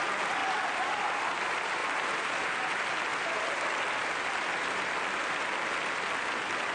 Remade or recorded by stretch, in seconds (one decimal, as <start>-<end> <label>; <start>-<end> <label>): 0.0-1.8 recorded; 1.8-2.5 remade; 2.5-3.1 recorded; 3.1-3.6 remade; 3.6-6.7 recorded